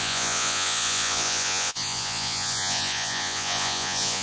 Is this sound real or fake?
fake